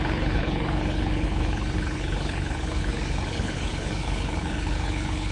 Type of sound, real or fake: fake